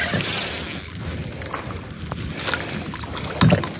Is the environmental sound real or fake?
real